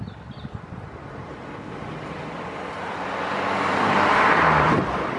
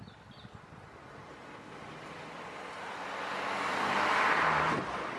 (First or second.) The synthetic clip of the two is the first